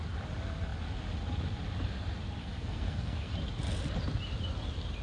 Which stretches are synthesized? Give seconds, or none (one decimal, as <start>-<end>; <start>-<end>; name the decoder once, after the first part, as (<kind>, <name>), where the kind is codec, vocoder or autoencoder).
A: 2.4-3.3 (codec, SNAC)